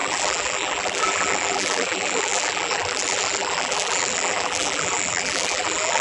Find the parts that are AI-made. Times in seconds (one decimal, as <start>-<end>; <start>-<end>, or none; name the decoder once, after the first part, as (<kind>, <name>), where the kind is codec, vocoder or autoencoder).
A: 0.0-6.0 (vocoder, BigVGAN v2)